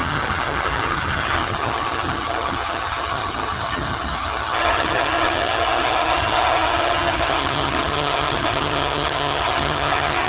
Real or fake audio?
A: fake